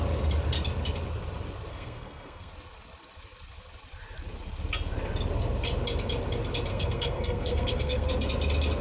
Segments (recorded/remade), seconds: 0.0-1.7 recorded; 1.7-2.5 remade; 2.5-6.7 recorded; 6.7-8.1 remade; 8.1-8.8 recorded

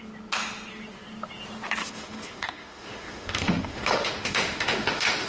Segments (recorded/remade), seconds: 0.0-1.8 recorded; 1.8-5.3 remade

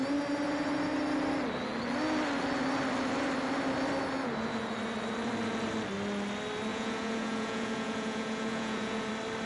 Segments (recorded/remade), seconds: 0.0-6.7 recorded; 6.7-9.1 remade; 9.1-9.5 recorded

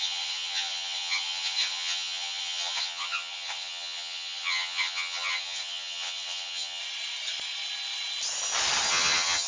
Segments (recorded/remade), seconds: 0.0-6.8 remade; 6.8-8.9 recorded; 8.9-9.5 remade

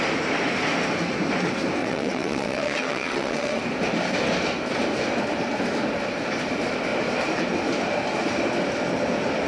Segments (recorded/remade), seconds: 0.0-1.8 recorded; 1.8-3.6 remade; 3.6-9.5 recorded

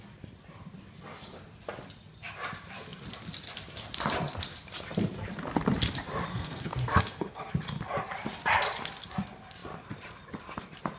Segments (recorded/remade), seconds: 0.0-6.3 recorded; 6.3-7.5 remade; 7.5-11.0 recorded

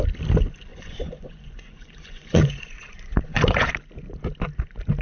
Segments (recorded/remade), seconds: 0.0-0.7 recorded; 0.7-3.7 remade; 3.7-5.0 recorded